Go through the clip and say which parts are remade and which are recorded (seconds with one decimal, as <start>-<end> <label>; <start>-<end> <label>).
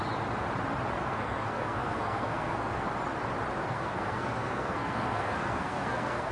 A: 0.0-1.0 recorded; 1.0-2.9 remade; 2.9-3.6 recorded; 3.6-6.3 remade